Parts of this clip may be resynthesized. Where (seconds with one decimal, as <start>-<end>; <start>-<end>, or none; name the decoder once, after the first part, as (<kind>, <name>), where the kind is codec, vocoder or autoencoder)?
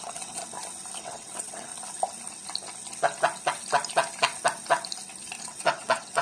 0.0-0.4 (vocoder, WaveNeXt); 1.0-1.7; 5.4-6.2